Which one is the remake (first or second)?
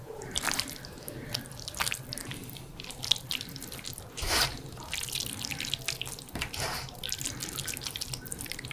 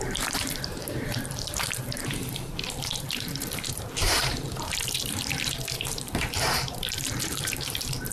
second